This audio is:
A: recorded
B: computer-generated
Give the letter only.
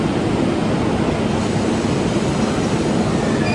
A